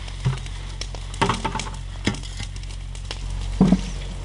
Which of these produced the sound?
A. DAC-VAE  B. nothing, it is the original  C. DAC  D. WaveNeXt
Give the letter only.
B